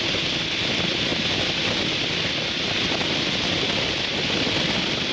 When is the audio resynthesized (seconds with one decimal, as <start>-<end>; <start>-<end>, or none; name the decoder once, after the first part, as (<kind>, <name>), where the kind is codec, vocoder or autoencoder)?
none